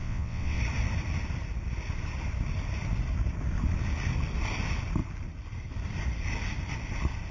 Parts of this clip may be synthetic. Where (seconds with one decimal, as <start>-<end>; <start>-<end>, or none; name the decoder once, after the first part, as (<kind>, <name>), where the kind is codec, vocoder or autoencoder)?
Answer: 0.0-0.6 (vocoder, WaveNeXt)